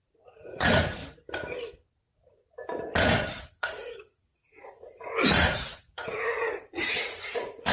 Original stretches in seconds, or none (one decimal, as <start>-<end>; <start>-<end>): 1.0-3.6